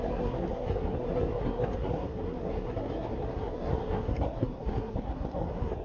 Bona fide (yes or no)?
no